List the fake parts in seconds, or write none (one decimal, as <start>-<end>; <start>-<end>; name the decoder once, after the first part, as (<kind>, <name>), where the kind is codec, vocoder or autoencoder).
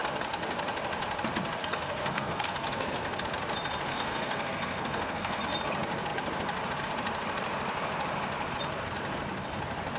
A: 1.6-3.2 (codec, SNAC); 3.9-5.4